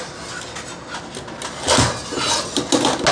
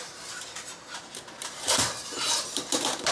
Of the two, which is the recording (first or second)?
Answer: first